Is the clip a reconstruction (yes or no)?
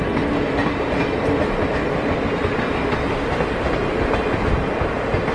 no